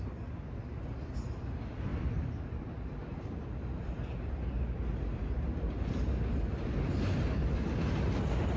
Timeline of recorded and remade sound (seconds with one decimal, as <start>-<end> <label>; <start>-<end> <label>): 0.0-8.6 recorded